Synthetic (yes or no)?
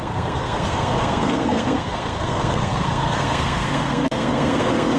yes